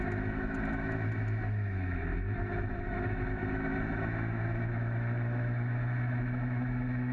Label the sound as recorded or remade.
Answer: remade